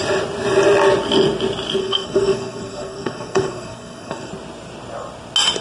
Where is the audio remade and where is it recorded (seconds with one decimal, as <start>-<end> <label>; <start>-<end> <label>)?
0.0-1.8 recorded; 1.8-4.3 remade; 4.3-5.6 recorded